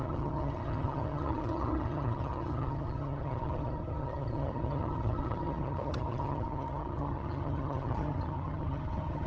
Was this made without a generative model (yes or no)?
no